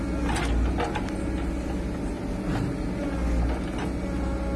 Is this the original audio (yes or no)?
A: yes